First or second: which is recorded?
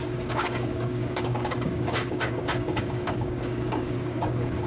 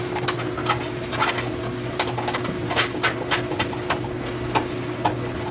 second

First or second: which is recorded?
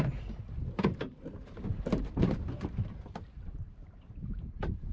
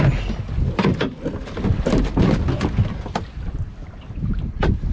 second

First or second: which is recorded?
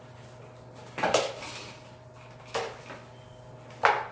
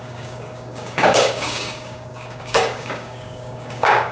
first